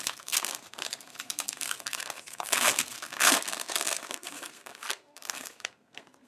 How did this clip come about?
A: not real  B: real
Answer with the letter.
A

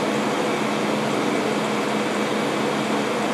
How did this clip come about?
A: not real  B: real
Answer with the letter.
B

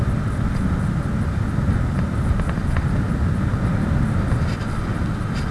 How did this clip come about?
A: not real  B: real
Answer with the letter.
B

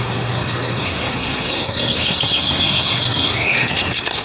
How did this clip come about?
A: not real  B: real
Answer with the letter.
A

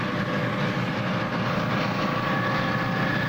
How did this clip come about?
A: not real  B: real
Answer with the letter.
B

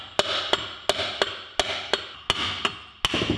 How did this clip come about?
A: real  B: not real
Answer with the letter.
A